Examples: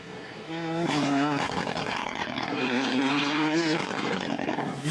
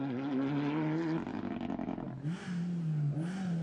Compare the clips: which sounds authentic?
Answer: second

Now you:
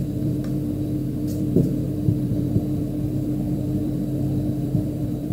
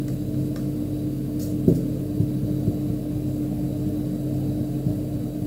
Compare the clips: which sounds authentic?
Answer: second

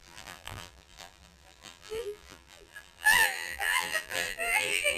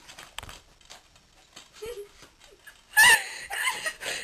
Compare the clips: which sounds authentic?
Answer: second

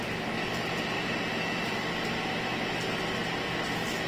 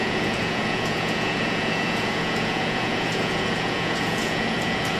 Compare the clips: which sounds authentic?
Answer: first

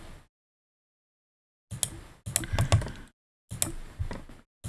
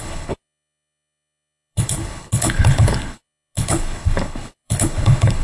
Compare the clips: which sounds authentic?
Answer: first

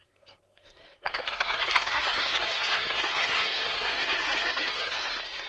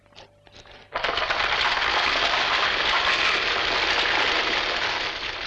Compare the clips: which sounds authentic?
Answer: second